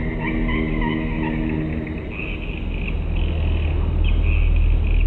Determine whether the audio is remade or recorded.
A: recorded